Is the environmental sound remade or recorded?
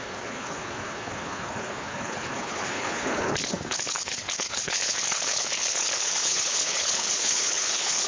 remade